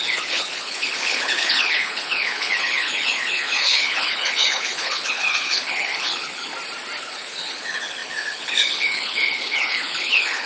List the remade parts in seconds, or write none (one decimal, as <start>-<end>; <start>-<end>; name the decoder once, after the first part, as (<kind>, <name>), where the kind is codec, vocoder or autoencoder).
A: 0.0-6.5 (codec, HILCodec); 7.0-10.5

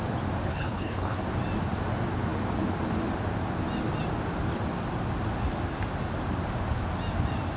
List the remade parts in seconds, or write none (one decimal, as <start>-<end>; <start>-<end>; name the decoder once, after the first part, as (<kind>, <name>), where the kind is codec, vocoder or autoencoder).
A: 0.5-1.2 (codec, HILCodec)